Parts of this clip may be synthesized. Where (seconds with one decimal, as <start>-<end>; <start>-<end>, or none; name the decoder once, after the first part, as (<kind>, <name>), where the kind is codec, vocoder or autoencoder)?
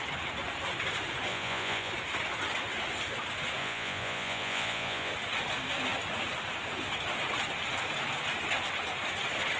1.3-1.9 (vocoder, Vocos); 3.6-5.1